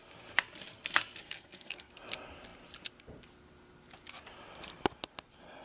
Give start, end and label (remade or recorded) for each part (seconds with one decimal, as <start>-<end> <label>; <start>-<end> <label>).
0.0-1.2 recorded; 1.2-1.9 remade; 1.9-5.6 recorded

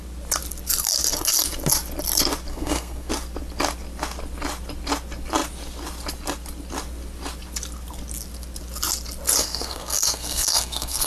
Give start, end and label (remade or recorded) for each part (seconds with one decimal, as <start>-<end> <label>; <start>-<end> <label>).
0.0-2.5 recorded; 2.5-3.1 remade; 3.1-9.4 recorded; 9.4-11.1 remade

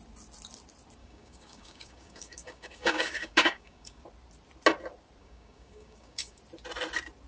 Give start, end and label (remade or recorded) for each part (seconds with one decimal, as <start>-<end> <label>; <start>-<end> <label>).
0.0-1.0 recorded; 1.0-4.0 remade; 4.0-5.2 recorded; 5.2-6.4 remade; 6.4-7.3 recorded

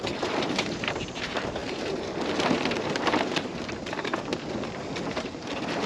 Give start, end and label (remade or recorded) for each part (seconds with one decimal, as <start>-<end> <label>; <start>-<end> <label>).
0.0-4.3 remade; 4.3-5.1 recorded; 5.1-5.9 remade

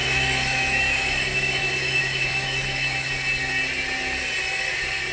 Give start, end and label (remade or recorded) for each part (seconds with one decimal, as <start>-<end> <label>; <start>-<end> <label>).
0.0-3.1 remade; 3.1-5.1 recorded

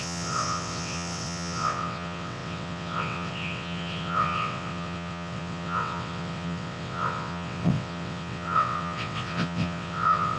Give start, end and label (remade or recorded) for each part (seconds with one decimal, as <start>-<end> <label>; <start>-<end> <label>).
0.0-10.4 remade